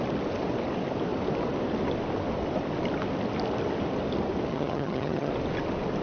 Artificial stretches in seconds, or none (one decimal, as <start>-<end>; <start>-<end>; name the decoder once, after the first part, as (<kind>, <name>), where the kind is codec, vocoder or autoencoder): 4.5-5.3 (vocoder, HiFi-GAN)